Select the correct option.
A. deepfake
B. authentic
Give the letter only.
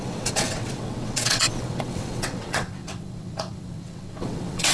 A